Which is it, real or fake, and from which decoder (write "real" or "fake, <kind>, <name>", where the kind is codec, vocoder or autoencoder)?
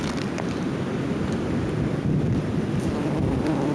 real